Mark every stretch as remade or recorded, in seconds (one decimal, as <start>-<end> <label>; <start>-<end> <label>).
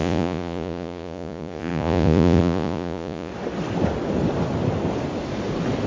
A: 0.0-3.3 remade; 3.3-5.9 recorded